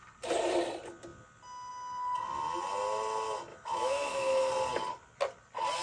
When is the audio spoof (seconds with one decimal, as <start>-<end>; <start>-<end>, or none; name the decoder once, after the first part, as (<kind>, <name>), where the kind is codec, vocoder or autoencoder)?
3.5-4.5 (autoencoder, DAC-VAE)